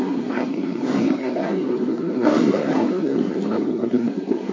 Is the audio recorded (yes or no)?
no